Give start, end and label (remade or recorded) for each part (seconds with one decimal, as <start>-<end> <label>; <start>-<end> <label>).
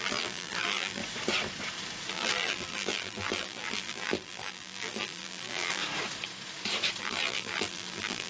0.0-1.0 remade; 1.0-2.1 recorded; 2.1-5.8 remade; 5.8-7.0 recorded; 7.0-8.3 remade